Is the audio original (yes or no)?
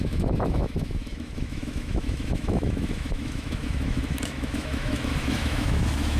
no